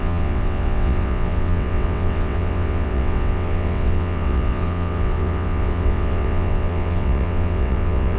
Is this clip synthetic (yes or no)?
yes